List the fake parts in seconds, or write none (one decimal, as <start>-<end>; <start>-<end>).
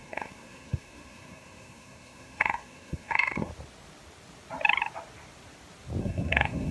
0.0-3.5; 6.0-6.7